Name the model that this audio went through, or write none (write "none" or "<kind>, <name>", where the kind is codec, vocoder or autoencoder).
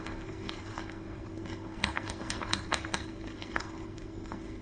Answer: codec, SNAC